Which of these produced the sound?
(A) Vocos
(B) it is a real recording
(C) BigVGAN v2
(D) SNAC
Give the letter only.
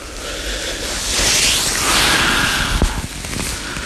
B